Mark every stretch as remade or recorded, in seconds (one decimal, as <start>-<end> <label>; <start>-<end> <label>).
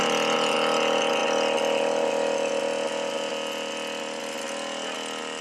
0.0-5.4 recorded